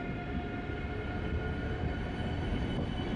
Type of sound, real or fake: real